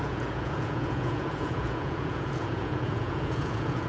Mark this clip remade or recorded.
remade